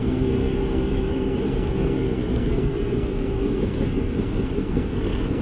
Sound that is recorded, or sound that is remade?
remade